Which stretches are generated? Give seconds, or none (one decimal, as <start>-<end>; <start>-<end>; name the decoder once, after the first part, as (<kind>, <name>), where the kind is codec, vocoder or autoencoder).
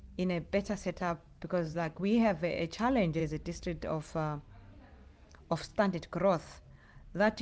1.0-2.0 (vocoder, BigVGAN v2)